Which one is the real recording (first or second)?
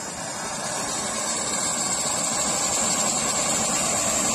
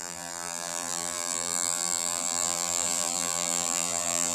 first